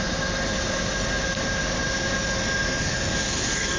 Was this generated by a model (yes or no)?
no